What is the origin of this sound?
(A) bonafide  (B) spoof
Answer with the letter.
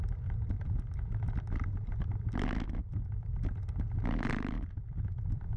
A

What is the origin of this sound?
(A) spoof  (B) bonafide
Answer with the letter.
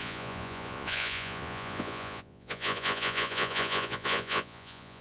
A